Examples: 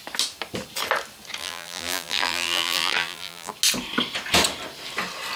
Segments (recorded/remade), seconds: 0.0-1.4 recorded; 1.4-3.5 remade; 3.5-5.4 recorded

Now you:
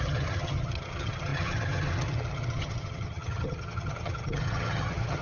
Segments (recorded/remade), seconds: 0.0-5.2 remade

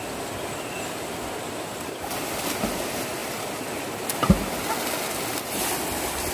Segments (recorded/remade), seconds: 0.0-6.3 recorded

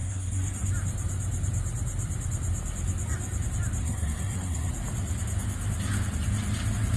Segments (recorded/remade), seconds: 0.0-0.7 remade; 0.7-3.8 recorded; 3.8-4.7 remade; 4.7-7.0 recorded